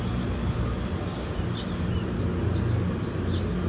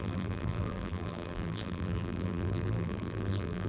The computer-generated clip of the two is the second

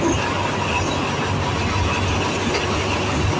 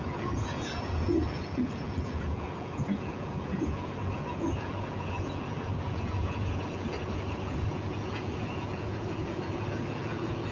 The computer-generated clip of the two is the second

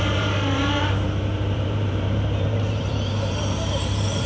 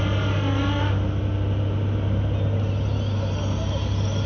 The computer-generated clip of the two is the first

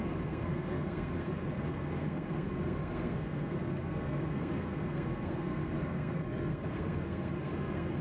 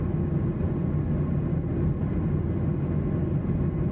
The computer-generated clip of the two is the first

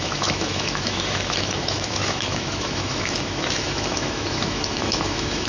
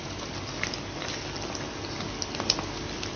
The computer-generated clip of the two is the first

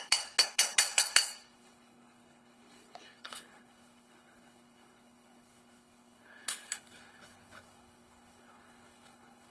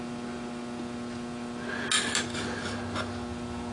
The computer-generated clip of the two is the first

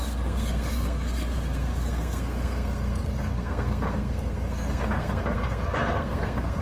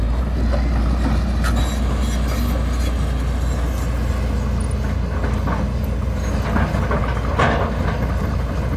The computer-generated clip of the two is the first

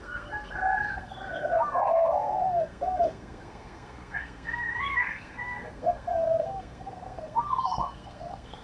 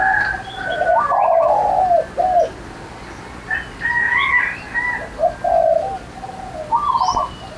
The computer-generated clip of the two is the first